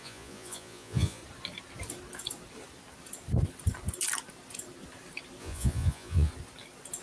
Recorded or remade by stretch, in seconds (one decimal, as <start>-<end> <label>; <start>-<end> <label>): 0.0-1.2 remade; 1.2-5.4 recorded; 5.4-6.3 remade; 6.3-7.0 recorded